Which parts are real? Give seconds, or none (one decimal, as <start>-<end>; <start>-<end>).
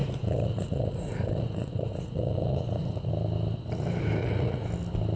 3.1-4.2; 4.7-5.2